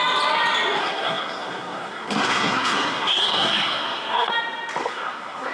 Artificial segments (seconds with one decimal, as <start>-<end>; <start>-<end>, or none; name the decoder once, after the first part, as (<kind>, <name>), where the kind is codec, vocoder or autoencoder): 0.8-4.3 (codec, SNAC); 4.8-5.5